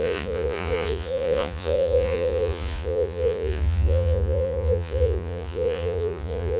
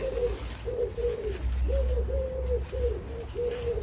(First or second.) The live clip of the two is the second